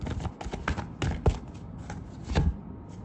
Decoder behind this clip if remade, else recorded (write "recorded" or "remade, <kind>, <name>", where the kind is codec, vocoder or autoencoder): recorded